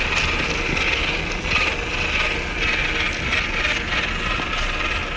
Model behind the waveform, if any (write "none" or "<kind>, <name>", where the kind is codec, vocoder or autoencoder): none